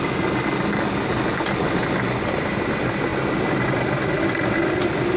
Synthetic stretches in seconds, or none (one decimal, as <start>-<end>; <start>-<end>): none